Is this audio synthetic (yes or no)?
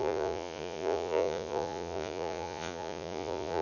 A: yes